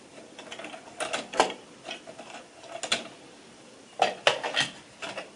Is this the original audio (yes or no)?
yes